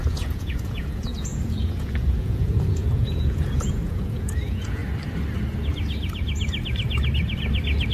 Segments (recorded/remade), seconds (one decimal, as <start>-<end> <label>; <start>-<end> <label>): 0.0-4.8 remade; 4.8-7.9 recorded